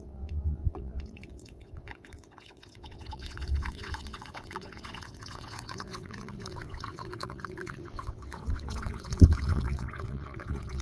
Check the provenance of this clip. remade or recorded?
remade